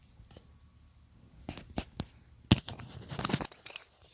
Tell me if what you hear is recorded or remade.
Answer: recorded